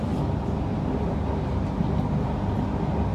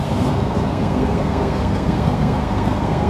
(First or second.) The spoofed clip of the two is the second